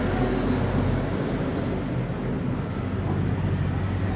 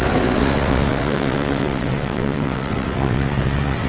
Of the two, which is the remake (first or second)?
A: second